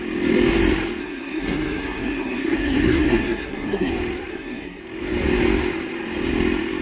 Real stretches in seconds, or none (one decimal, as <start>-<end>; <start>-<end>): 0.0-1.0; 3.9-4.3; 4.8-6.8